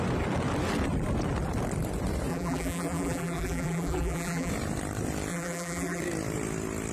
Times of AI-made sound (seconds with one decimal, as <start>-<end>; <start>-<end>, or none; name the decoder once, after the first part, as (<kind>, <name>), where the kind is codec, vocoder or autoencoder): 2.3-4.5 (vocoder, BigVGAN v2); 5.3-6.0